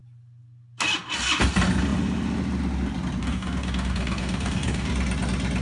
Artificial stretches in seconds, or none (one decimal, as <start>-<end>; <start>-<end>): 3.2-4.9